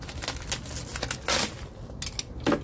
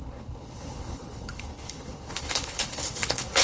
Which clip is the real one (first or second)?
first